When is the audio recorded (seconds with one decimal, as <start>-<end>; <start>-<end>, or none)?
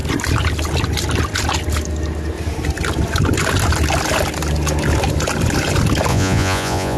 0.0-6.1